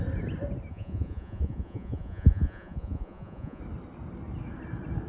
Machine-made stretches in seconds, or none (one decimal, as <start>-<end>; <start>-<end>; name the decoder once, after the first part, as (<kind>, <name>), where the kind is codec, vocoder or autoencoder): 0.7-3.6 (vocoder, Vocos)

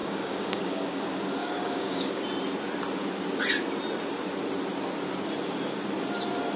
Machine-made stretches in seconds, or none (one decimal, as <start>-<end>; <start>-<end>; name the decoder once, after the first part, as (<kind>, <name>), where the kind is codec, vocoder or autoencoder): 0.0-1.0 (codec, DAC); 1.4-2.1

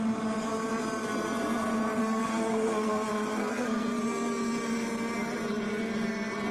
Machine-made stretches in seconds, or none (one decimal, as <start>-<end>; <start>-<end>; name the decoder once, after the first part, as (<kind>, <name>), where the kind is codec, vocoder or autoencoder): 2.0-4.0 (codec, SNAC)

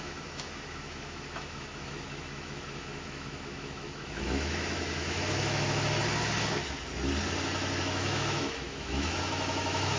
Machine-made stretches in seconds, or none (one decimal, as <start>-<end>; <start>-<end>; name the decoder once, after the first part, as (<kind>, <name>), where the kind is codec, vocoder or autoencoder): 0.0-6.0 (autoencoder, DAC-VAE); 7.8-10.0

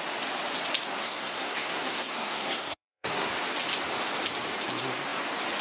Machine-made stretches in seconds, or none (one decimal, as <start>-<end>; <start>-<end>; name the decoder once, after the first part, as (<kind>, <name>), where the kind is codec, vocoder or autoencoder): 1.0-3.3 (codec, SNAC)

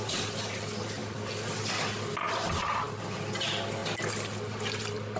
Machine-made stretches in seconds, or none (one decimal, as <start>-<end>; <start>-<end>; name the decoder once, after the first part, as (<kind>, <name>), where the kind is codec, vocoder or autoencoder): none